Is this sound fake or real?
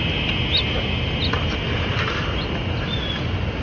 real